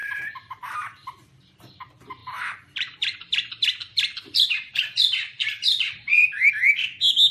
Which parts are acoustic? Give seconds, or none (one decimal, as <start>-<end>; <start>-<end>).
0.0-2.2; 6.5-7.3

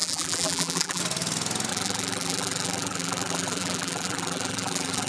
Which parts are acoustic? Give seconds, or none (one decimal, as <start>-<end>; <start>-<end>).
1.0-1.7

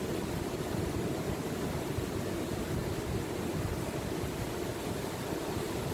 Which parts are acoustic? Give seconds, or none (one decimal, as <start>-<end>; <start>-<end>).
0.0-5.9

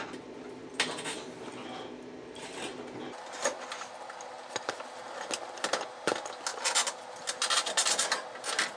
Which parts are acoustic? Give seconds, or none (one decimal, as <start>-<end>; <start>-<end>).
0.0-8.8

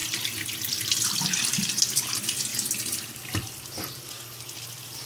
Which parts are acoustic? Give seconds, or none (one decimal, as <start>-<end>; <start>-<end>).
1.5-2.5; 3.5-5.1

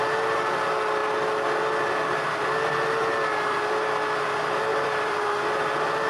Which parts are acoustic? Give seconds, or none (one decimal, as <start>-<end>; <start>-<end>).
0.0-4.7; 5.2-6.1